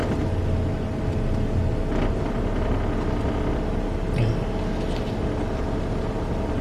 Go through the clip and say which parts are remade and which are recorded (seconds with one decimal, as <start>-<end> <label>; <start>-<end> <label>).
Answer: 0.0-6.6 recorded